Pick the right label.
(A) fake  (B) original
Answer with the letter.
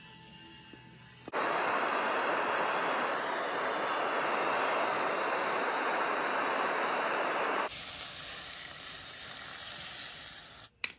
B